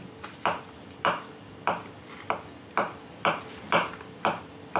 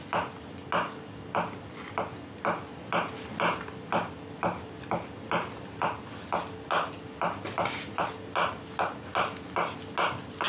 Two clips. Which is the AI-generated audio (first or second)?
first